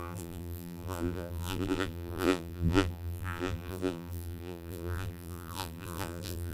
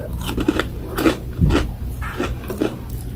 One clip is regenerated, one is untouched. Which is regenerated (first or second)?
first